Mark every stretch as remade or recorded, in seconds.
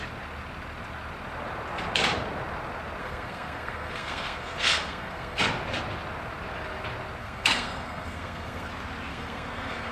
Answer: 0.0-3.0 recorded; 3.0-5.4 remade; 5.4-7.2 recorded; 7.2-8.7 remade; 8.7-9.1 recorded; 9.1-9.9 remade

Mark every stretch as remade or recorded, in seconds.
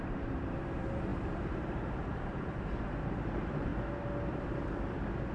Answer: 0.0-3.7 remade; 3.7-4.4 recorded; 4.4-5.3 remade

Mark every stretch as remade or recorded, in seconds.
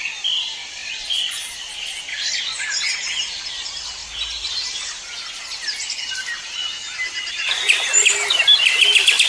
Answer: 0.0-9.3 recorded